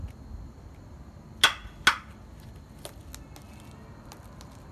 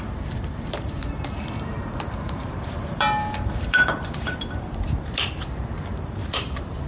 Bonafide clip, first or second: first